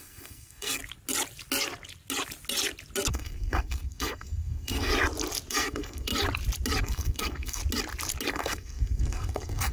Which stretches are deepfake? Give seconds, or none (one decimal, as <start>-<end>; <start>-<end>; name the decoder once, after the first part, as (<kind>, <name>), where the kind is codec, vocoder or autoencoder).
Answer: 0.0-0.8 (codec, SNAC); 3.1-4.9; 5.5-6.1; 6.8-7.6; 8.3-9.7